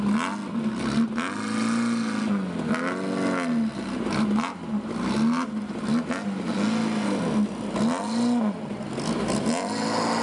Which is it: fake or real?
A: real